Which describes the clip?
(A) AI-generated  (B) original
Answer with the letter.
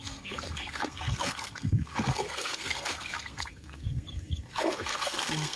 A